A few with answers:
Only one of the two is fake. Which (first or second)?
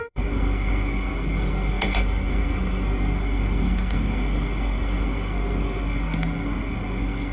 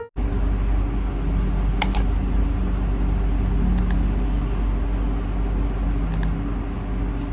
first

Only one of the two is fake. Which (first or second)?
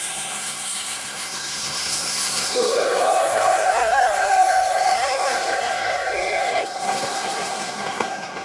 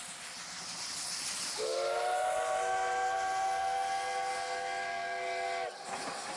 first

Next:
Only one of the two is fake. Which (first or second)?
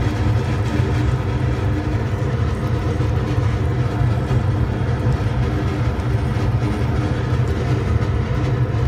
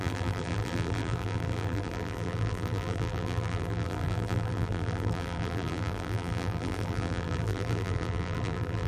second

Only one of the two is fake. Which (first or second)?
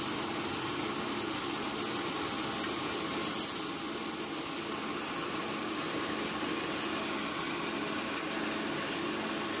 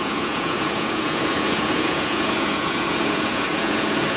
second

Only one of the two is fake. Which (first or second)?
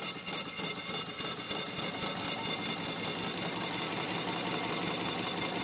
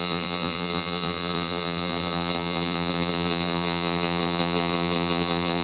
second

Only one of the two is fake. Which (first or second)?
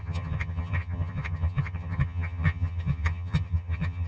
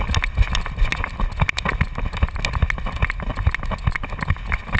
first